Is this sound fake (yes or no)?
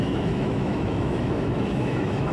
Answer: yes